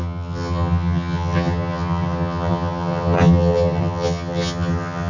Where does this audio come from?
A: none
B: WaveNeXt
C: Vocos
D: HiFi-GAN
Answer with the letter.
D